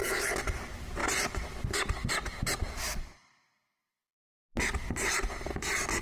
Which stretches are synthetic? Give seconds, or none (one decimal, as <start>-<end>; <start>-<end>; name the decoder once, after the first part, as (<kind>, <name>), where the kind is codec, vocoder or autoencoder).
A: none